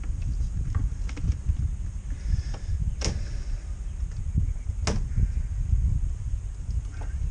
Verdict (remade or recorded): recorded